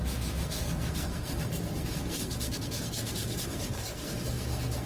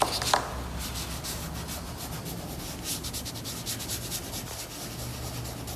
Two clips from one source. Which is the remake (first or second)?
first